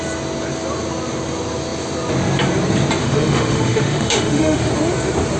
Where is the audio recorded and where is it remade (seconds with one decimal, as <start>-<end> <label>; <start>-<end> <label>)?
0.0-3.0 recorded; 3.0-4.7 remade; 4.7-5.4 recorded